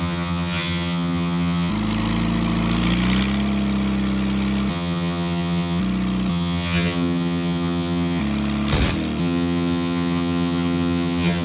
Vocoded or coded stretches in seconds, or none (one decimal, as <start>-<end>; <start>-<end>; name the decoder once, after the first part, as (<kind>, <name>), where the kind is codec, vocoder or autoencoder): 0.0-1.7 (vocoder, HiFi-GAN); 4.7-5.8; 6.3-8.2; 9.2-11.4